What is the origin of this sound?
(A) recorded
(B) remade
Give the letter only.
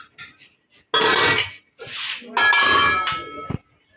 A